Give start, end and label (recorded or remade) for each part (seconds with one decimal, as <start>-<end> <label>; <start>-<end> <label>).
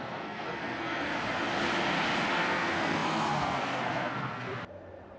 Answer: 0.0-1.1 remade; 1.1-2.3 recorded; 2.3-4.5 remade; 4.5-5.2 recorded